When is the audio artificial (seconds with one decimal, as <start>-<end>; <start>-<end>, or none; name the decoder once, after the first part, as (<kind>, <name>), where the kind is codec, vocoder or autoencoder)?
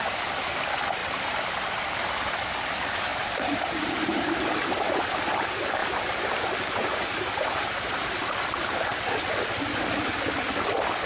3.1-5.1 (vocoder, BigVGAN v2); 5.8-8.1